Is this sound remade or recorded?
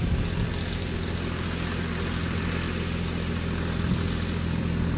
recorded